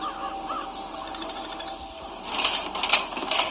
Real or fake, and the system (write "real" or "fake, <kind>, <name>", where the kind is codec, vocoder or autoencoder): real